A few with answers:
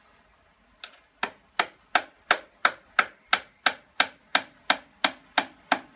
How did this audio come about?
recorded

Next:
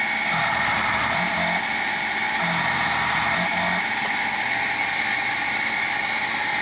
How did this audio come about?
recorded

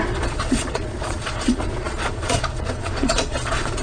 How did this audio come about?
remade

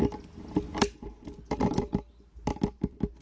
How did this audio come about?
recorded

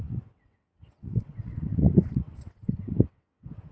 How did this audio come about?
remade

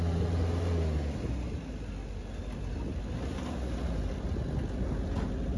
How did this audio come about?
recorded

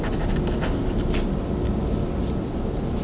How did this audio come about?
recorded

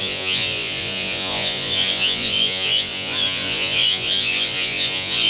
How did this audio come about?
remade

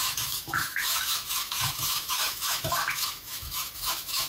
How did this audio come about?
remade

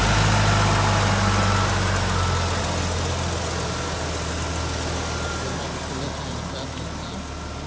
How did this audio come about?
recorded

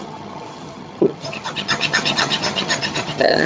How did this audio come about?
remade